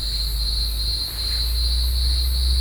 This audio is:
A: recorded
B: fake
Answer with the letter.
A